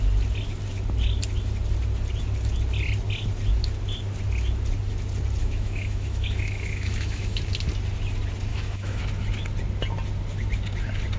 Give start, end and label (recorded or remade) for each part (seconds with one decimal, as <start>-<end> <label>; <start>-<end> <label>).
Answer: 0.0-5.4 recorded; 5.4-7.4 remade; 7.4-8.5 recorded; 8.5-9.0 remade; 9.0-11.2 recorded